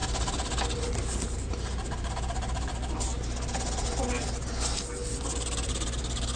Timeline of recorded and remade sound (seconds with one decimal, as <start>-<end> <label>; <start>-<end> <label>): 0.0-6.4 recorded